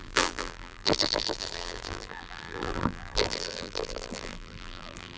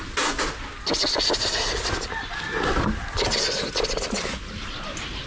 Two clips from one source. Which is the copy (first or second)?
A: first